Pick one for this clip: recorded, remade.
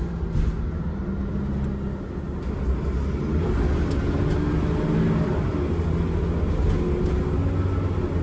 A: recorded